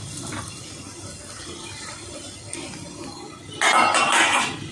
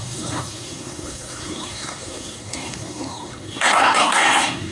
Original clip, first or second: first